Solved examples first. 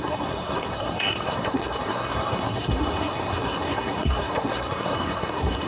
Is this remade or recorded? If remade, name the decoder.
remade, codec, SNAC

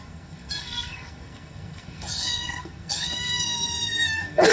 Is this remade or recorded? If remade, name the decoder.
remade, codec, SNAC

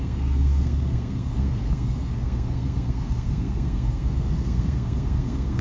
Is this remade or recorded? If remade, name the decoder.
remade, codec, SNAC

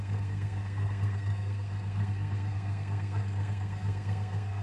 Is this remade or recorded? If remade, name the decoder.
remade, codec, SNAC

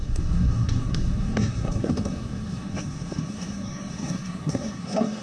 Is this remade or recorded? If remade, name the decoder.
remade, codec, SNAC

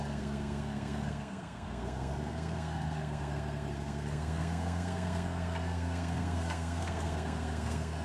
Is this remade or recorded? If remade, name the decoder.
remade, codec, SNAC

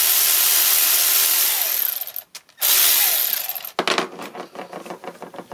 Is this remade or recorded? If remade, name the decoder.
recorded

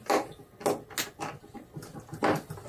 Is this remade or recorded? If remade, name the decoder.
recorded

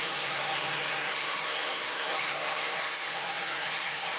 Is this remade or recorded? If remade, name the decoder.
remade, codec, SNAC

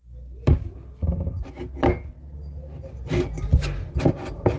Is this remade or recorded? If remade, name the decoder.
recorded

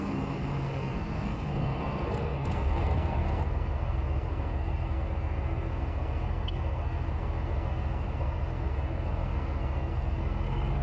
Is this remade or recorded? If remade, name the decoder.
remade, codec, SNAC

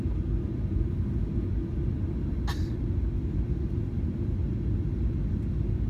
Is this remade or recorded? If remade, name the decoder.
recorded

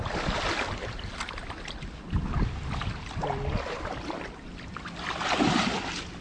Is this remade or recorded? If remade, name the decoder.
recorded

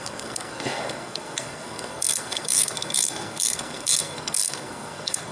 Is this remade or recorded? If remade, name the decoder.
remade, codec, SNAC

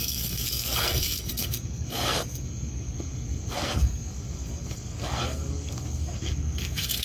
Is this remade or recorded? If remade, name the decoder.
remade, codec, SNAC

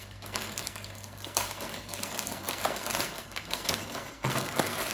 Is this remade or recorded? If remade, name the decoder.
remade, codec, SNAC